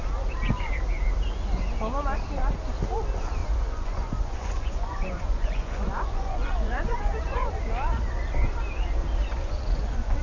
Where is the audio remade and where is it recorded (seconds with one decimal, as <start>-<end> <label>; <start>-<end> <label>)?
0.0-3.4 recorded; 3.4-7.6 remade; 7.6-9.3 recorded; 9.3-10.2 remade